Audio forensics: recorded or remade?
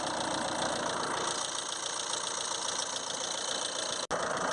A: recorded